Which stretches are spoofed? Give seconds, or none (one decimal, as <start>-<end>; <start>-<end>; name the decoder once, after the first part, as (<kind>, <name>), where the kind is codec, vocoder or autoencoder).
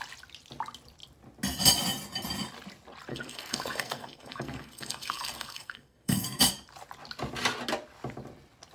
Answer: 3.1-6.5 (codec, SNAC)